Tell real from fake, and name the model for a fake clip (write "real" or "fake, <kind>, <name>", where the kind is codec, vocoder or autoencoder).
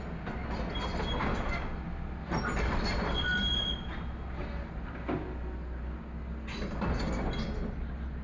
real